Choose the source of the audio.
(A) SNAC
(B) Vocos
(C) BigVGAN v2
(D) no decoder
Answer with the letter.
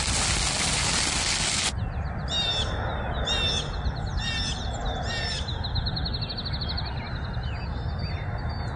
D